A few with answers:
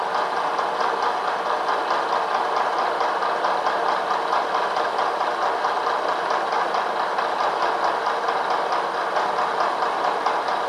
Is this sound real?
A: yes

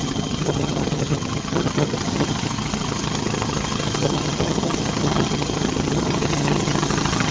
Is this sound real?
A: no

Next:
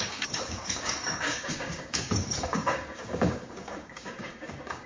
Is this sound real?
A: no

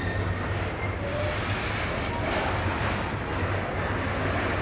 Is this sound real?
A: yes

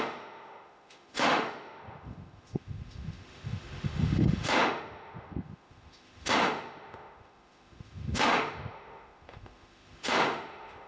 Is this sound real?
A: no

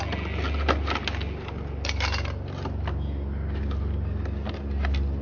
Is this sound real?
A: yes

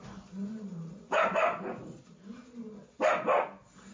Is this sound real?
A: yes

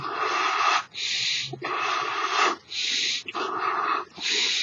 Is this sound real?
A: yes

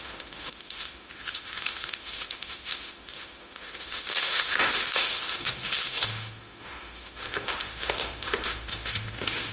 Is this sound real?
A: no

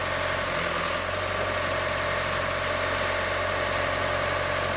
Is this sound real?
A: yes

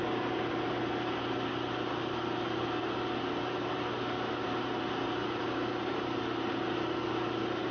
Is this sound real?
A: yes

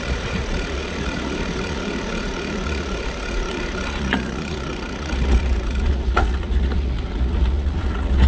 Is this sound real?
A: no